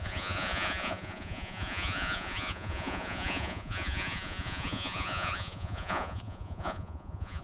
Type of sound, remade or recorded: remade